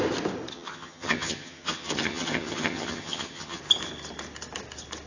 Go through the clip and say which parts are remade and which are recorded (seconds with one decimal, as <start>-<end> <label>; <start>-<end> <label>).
0.0-0.5 recorded; 0.5-3.6 remade; 3.6-5.1 recorded